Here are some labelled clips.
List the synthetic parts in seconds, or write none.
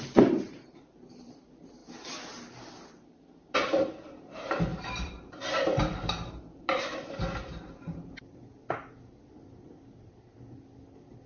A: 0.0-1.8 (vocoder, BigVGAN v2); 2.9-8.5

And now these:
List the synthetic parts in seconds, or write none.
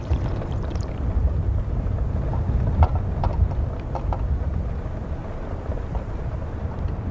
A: 0.0-1.2 (vocoder, BigVGAN v2); 2.3-7.1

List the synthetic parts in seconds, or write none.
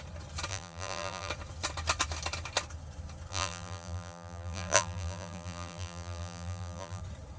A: 0.5-1.3 (vocoder, BigVGAN v2); 3.3-7.0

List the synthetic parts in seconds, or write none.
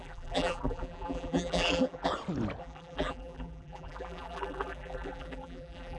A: 0.0-2.1 (vocoder, BigVGAN v2); 2.6-6.0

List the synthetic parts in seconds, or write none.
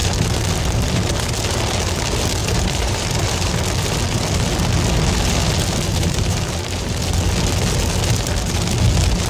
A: 2.4-3.5 (vocoder, BigVGAN v2); 5.9-7.0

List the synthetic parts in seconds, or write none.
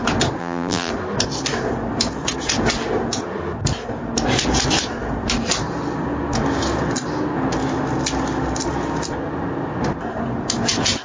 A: 0.4-0.9 (vocoder, BigVGAN v2)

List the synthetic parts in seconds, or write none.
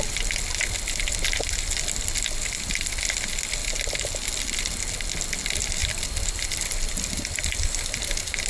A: none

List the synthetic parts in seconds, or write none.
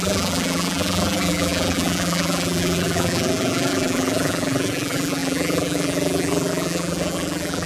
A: 0.0-7.7 (vocoder, BigVGAN v2)